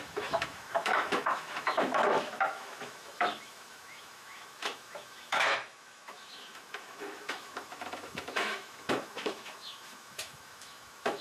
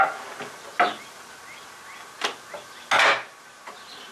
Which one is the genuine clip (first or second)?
second